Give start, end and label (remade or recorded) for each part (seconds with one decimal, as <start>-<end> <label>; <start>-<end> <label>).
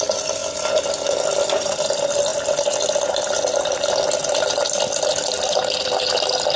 0.0-6.6 recorded